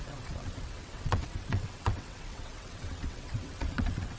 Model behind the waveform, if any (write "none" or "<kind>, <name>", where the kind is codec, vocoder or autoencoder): vocoder, WaveNeXt